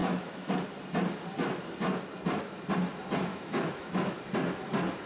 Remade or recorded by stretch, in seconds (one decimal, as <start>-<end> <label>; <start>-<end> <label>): 0.0-0.5 remade; 0.5-3.3 recorded; 3.3-4.2 remade; 4.2-5.1 recorded